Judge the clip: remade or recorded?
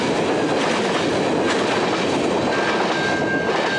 recorded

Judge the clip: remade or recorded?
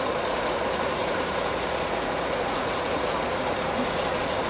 remade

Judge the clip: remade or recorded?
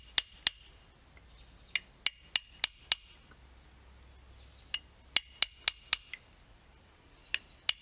recorded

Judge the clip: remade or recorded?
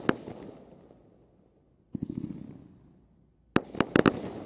recorded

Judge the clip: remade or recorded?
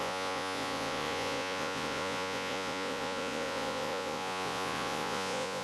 remade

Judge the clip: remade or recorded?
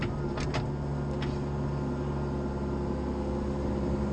recorded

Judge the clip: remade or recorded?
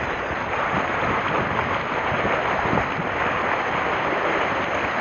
recorded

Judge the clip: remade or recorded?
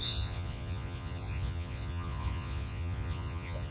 remade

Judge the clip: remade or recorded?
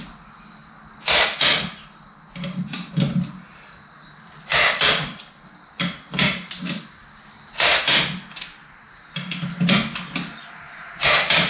recorded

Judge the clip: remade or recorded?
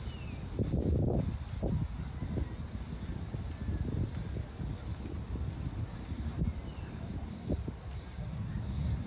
recorded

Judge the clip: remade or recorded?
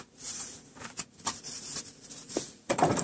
remade